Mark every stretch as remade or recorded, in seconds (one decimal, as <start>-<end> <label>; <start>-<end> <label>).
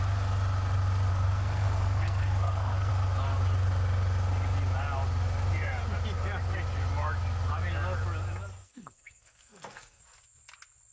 0.0-1.1 recorded; 1.1-2.9 remade; 2.9-8.6 recorded; 8.6-10.0 remade; 10.0-10.9 recorded